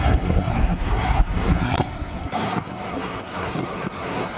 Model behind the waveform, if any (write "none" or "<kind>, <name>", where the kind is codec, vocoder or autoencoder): codec, SNAC